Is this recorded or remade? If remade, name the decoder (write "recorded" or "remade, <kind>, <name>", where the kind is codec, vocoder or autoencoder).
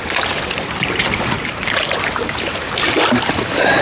recorded